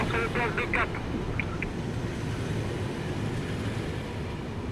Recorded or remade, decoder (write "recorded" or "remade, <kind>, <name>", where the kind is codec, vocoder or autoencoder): recorded